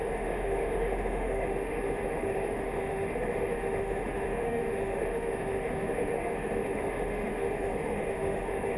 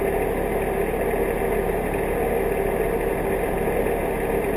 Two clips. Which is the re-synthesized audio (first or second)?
first